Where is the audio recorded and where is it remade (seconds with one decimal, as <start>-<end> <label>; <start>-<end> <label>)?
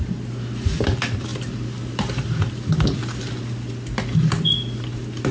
0.0-5.3 recorded